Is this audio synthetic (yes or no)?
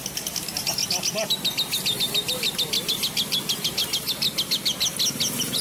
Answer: no